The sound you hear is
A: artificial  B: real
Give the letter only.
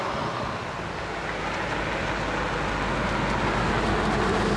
B